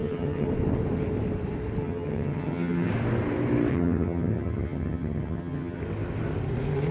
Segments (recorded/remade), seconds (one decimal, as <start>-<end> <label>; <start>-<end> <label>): 0.0-0.5 remade; 0.5-1.8 recorded; 1.8-2.9 remade; 2.9-3.7 recorded; 3.7-5.8 remade; 5.8-6.9 recorded